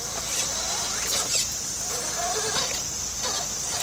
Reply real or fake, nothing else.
real